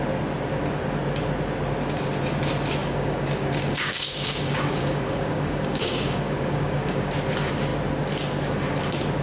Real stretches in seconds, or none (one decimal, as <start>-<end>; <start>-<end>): 0.0-2.8; 7.1-9.2